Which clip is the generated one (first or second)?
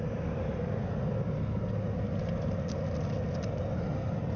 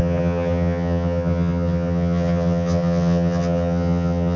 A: second